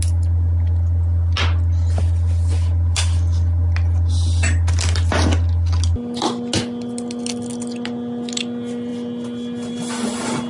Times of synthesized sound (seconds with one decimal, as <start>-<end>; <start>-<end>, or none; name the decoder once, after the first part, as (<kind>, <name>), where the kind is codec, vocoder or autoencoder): none